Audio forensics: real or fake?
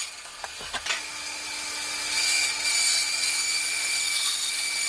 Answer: real